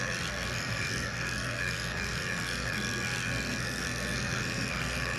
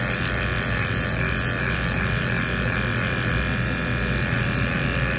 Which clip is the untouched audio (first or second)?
second